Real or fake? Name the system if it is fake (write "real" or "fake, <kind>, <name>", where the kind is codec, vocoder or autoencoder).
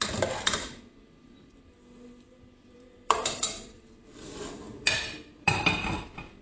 fake, vocoder, BigVGAN v2